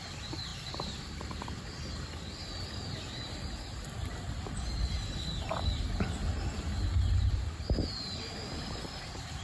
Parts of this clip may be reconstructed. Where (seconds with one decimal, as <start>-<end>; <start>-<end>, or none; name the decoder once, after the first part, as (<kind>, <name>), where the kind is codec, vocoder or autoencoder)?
0.5-1.6 (vocoder, BigVGAN v2)